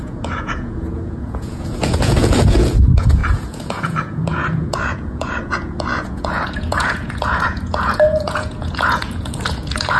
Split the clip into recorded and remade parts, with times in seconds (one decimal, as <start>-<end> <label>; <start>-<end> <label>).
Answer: 0.0-10.0 remade